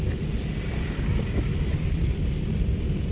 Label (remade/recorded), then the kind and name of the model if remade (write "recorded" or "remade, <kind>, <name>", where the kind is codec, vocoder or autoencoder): recorded